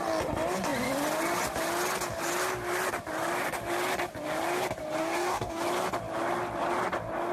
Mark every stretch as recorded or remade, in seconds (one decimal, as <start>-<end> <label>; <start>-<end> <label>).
0.0-5.0 recorded; 5.0-5.6 remade; 5.6-7.3 recorded